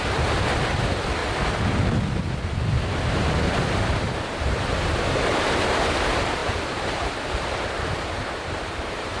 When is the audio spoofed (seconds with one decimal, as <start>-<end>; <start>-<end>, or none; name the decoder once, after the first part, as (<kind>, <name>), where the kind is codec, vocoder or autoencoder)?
0.0-1.2 (vocoder, BigVGAN v2); 3.1-9.2